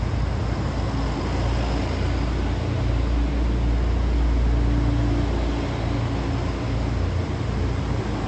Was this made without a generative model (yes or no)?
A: yes